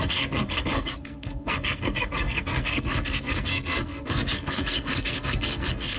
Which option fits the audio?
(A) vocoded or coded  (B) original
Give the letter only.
A